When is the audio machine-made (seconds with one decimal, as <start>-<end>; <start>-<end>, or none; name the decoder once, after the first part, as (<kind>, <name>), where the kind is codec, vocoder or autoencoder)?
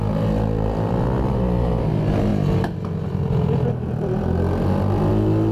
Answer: none